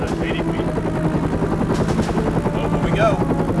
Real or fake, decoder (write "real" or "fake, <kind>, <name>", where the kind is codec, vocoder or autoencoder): real